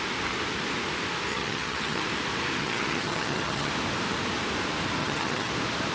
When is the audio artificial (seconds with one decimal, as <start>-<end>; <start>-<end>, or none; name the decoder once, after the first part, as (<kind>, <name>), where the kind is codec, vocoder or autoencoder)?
1.3-2.1 (vocoder, HiFi-GAN); 2.6-3.7; 5.0-5.5